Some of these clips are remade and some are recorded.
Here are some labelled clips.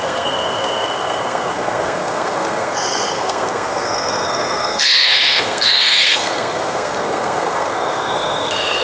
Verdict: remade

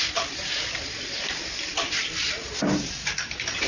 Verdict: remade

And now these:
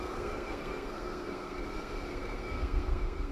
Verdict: remade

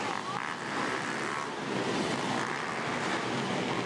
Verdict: recorded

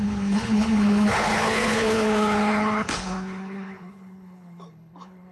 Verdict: remade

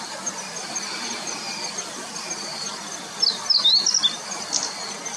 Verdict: recorded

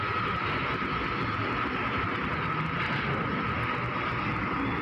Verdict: recorded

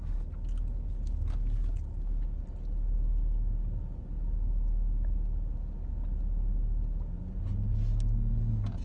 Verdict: recorded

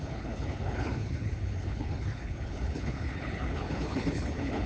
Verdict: remade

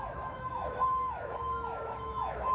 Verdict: remade